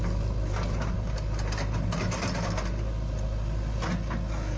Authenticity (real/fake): real